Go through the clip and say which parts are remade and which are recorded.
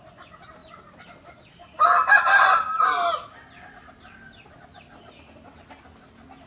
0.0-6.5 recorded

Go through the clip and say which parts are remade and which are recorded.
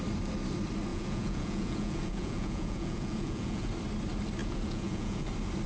0.0-0.9 recorded; 0.9-3.7 remade; 3.7-4.4 recorded; 4.4-5.3 remade; 5.3-5.7 recorded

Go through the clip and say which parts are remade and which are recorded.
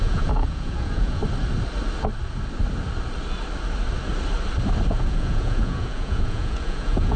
0.0-1.2 remade; 1.2-4.9 recorded; 4.9-7.2 remade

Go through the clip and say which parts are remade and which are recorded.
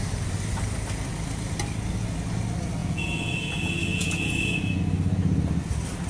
0.0-2.8 recorded; 2.8-4.8 remade; 4.8-6.1 recorded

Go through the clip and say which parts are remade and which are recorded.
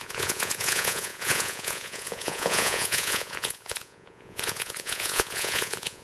0.0-6.0 remade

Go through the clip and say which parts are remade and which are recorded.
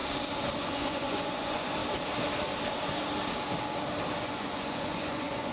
0.0-0.6 recorded; 0.6-1.8 remade; 1.8-4.2 recorded; 4.2-5.5 remade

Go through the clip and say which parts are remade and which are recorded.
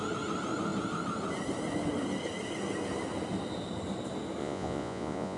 0.0-4.4 recorded; 4.4-5.4 remade